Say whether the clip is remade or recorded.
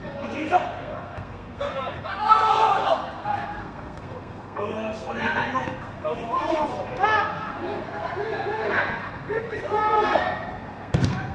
remade